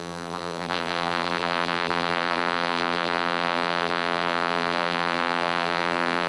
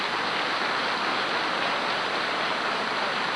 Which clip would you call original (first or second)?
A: second